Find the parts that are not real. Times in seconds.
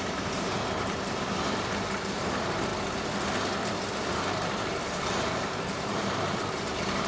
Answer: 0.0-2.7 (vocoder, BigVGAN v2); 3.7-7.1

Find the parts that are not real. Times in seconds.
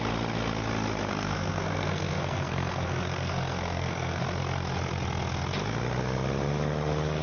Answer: 1.1-4.2 (codec, SNAC)